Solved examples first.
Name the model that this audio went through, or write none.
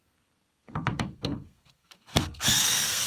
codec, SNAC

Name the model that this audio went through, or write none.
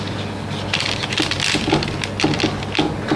none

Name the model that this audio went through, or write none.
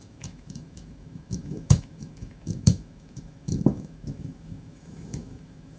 autoencoder, DAC-VAE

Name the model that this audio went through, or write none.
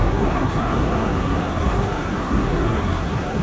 codec, SNAC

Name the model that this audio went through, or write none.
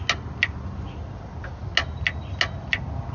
none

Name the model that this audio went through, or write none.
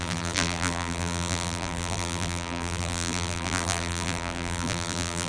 vocoder, BigVGAN v2